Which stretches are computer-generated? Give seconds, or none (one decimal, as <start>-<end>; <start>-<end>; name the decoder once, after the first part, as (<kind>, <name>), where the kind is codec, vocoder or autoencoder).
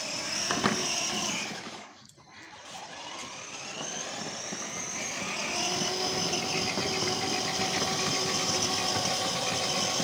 1.2-2.1 (codec, DAC)